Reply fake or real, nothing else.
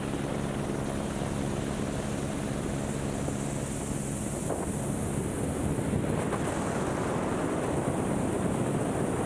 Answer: real